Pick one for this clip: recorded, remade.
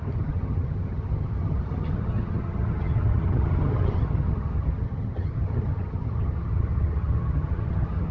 remade